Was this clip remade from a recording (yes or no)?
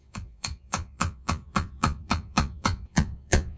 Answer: yes